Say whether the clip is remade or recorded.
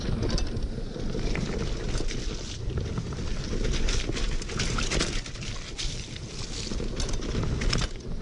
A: recorded